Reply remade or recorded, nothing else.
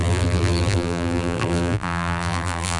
remade